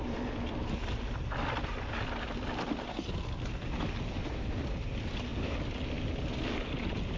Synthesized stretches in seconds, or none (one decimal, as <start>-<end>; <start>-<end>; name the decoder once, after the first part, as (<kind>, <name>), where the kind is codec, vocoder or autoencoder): none